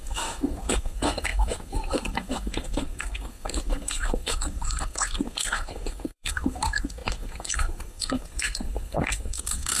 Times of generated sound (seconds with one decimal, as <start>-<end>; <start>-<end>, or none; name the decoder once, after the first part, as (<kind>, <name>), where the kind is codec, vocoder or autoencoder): 0.0-9.8 (codec, SNAC)